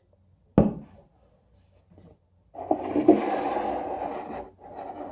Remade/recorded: recorded